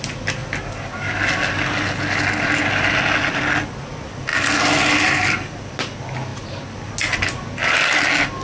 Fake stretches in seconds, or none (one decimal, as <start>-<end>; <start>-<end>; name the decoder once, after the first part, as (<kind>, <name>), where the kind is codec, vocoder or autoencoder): none